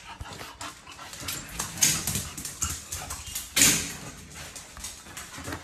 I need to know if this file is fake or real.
real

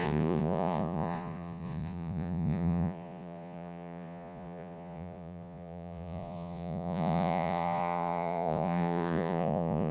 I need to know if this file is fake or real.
fake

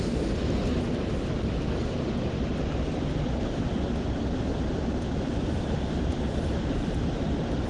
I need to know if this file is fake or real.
real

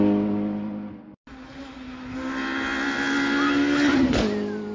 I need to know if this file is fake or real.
real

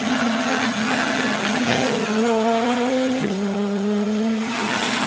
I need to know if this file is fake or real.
fake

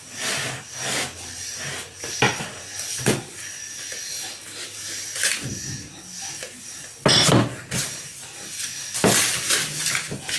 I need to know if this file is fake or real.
real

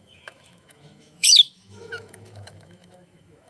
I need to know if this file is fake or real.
fake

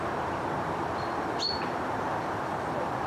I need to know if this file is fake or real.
real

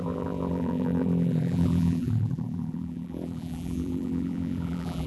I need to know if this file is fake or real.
fake